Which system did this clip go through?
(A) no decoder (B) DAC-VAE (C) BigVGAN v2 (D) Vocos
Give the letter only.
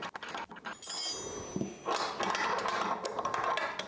A